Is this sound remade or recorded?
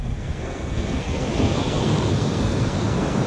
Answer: remade